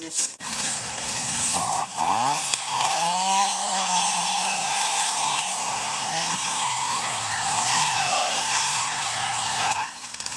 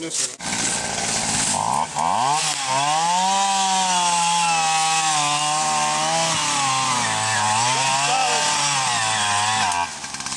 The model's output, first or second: first